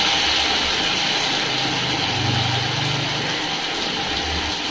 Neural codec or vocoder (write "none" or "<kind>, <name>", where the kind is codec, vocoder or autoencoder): none